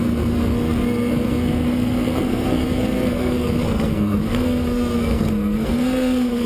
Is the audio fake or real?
fake